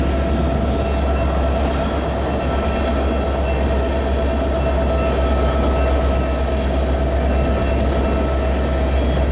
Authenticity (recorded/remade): recorded